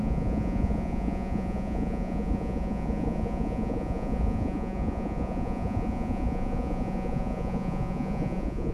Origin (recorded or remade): remade